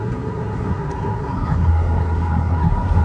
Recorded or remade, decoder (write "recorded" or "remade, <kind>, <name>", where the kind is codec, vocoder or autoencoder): remade, codec, SNAC